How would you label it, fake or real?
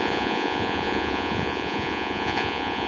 fake